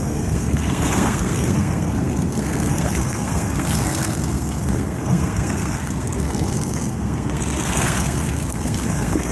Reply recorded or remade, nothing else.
remade